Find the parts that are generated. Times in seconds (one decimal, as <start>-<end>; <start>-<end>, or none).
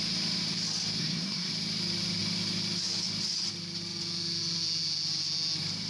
1.0-1.5